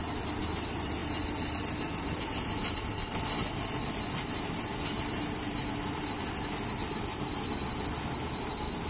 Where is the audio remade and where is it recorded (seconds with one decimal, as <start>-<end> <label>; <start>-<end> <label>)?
0.0-7.6 remade; 7.6-8.5 recorded; 8.5-8.9 remade